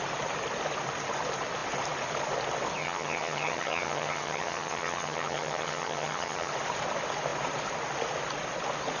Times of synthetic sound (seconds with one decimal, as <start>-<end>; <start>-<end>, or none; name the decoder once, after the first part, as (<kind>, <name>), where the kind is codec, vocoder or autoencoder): 2.8-6.5 (vocoder, HiFi-GAN)